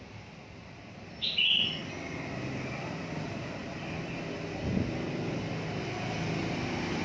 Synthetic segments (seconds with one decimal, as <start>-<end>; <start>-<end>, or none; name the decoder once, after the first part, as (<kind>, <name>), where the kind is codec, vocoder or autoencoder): none